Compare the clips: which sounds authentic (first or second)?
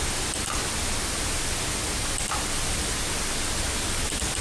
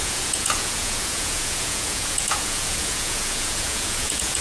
first